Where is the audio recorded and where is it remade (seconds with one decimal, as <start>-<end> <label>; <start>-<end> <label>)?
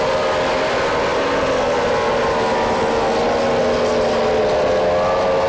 0.0-5.5 recorded